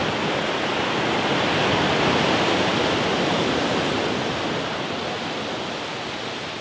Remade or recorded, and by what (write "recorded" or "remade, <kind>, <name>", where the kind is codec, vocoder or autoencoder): recorded